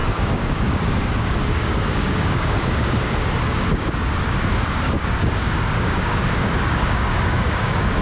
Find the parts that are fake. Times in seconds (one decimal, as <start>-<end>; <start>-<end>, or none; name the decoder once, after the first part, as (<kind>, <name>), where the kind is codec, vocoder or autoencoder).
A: 0.0-8.0 (codec, DAC)